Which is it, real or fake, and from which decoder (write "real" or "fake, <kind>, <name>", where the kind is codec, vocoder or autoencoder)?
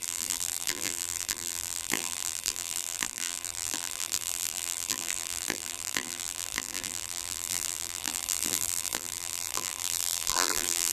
fake, vocoder, BigVGAN v2